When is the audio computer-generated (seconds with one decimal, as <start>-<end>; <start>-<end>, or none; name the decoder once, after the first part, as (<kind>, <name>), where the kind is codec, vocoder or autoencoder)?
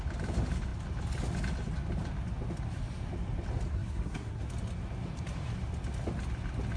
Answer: 3.7-4.4 (codec, SNAC)